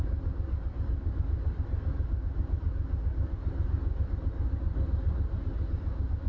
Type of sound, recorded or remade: recorded